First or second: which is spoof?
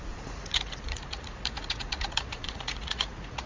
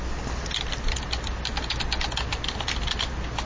first